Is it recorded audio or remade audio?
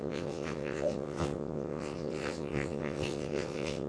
remade